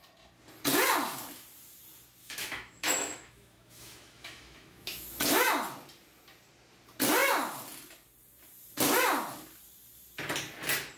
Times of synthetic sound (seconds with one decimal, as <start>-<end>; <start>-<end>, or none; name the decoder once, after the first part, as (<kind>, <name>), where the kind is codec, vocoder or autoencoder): 2.2-5.2 (autoencoder, DAC-VAE)